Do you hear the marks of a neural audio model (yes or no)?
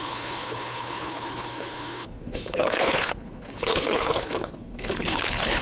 yes